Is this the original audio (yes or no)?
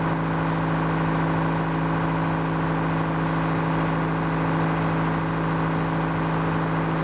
yes